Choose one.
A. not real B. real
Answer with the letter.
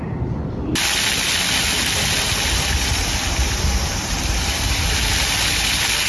B